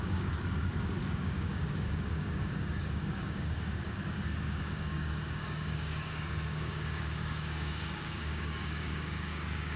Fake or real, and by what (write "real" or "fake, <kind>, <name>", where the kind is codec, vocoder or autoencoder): fake, codec, DAC